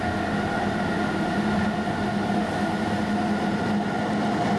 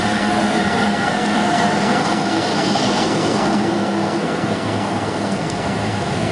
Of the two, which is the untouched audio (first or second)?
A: first